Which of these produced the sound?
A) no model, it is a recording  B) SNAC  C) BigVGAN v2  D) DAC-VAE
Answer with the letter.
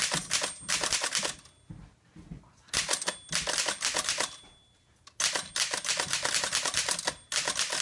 A